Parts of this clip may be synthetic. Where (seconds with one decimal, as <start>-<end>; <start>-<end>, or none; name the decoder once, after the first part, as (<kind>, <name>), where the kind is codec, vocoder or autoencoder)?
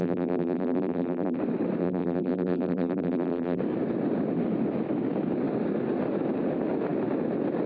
0.0-1.4 (vocoder, BigVGAN v2); 1.8-3.6